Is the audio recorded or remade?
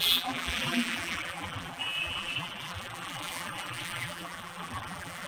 remade